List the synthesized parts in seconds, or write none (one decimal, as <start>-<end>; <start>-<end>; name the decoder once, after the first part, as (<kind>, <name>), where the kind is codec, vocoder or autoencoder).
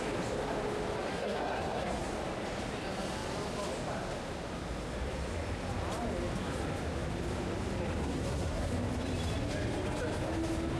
1.1-2.1 (codec, SNAC); 8.0-8.7